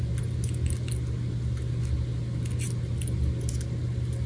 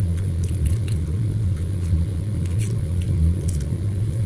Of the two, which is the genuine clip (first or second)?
first